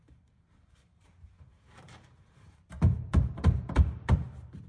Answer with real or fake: fake